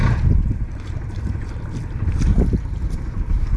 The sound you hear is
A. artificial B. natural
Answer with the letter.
B